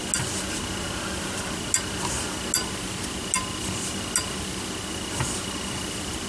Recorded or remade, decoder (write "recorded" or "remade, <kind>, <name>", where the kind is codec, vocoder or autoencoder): recorded